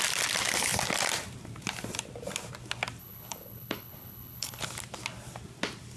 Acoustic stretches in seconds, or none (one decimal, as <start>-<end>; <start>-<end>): 0.0-3.0; 4.6-6.0